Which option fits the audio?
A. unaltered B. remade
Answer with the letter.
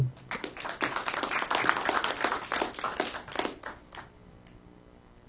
A